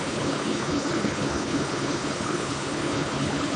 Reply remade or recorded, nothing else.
remade